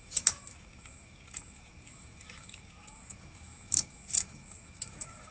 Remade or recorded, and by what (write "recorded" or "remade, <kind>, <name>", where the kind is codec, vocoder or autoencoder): remade, autoencoder, DAC-VAE